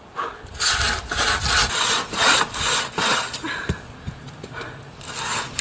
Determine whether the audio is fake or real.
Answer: real